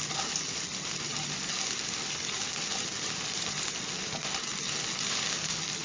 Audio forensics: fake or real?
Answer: real